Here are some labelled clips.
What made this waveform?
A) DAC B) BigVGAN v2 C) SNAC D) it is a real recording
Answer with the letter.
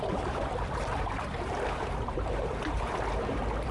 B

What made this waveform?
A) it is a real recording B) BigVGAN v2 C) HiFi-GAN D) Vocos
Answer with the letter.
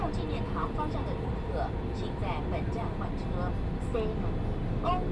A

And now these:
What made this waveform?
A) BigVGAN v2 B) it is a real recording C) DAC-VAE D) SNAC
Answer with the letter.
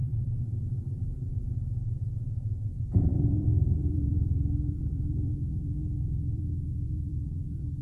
A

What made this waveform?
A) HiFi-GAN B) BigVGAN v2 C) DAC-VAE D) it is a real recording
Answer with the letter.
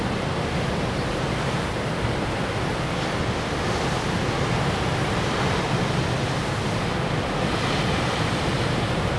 D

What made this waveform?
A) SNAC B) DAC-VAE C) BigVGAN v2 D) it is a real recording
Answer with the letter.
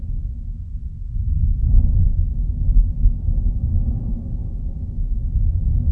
D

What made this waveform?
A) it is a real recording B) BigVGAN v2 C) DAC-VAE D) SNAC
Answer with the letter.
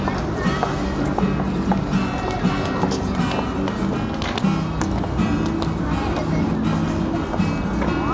A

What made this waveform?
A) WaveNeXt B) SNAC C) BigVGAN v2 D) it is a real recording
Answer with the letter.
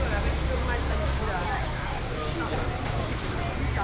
D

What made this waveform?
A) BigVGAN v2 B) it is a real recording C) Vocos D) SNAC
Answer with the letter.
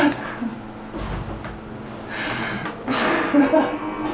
B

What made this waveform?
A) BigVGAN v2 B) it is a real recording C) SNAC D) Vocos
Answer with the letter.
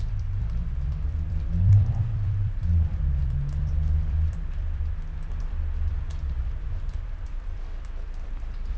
A